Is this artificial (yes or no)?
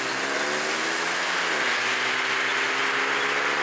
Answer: no